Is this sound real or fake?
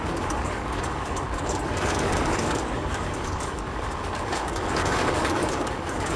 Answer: fake